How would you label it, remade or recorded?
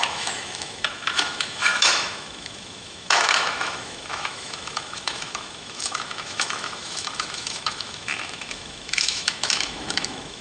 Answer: remade